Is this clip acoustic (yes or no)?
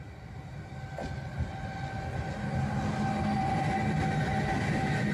yes